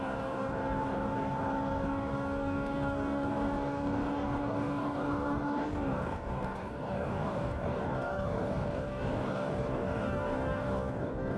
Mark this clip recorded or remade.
remade